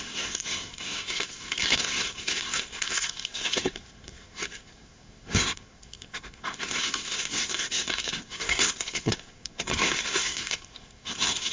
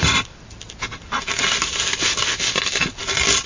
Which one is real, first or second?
second